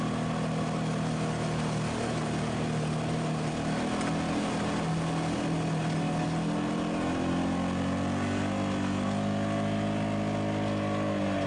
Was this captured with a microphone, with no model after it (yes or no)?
yes